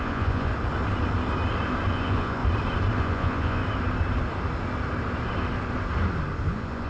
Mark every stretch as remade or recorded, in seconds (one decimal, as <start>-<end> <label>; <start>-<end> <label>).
0.0-0.5 remade; 0.5-1.9 recorded; 1.9-2.4 remade; 2.4-3.0 recorded; 3.0-3.6 remade; 3.6-6.5 recorded; 6.5-6.9 remade